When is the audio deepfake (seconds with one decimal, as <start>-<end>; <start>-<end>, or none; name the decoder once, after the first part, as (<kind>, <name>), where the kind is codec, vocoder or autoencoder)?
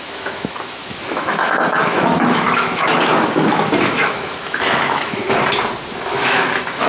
0.0-3.1 (autoencoder, DAC-VAE); 3.8-5.2; 6.1-6.9